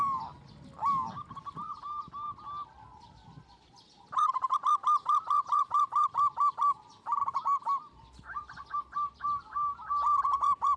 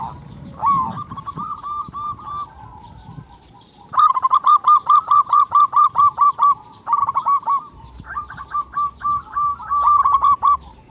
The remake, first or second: second